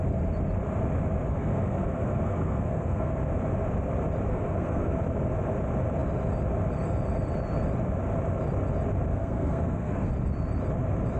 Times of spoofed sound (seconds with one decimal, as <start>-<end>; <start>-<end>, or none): 1.3-3.1; 4.3-5.0; 9.1-10.1